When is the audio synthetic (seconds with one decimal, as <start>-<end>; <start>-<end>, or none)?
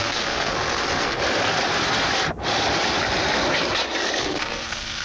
0.0-1.2; 4.2-5.0